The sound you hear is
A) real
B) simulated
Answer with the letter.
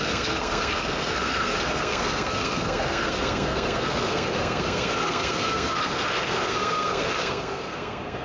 B